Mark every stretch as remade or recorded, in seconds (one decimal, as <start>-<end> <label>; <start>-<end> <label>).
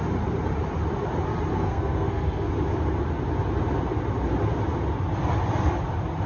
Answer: 0.0-1.5 recorded; 1.5-2.5 remade; 2.5-6.3 recorded